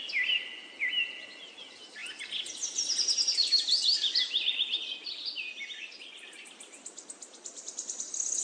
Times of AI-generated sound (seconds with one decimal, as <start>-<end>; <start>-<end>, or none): none